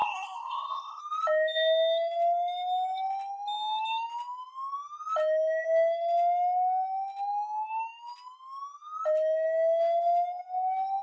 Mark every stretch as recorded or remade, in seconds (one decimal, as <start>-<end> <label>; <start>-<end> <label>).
0.0-1.0 remade; 1.0-11.0 recorded